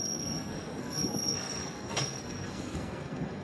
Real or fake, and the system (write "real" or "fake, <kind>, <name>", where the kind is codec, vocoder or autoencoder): fake, codec, SNAC